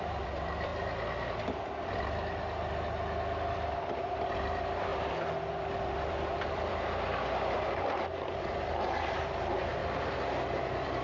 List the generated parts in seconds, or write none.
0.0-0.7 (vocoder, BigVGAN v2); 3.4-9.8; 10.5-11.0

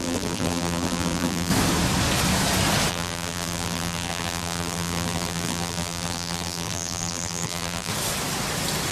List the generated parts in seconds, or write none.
0.0-1.5 (vocoder, BigVGAN v2); 2.9-7.9

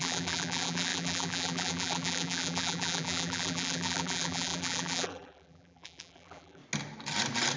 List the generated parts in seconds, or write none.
0.0-6.6 (vocoder, BigVGAN v2)

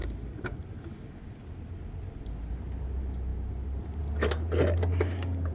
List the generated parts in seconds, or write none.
0.0-2.5 (vocoder, BigVGAN v2)